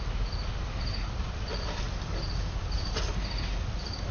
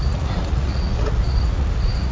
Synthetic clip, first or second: second